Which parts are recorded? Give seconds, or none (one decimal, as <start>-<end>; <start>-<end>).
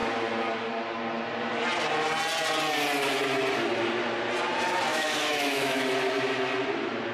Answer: 0.0-4.9; 5.8-7.1